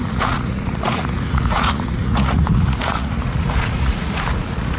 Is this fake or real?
fake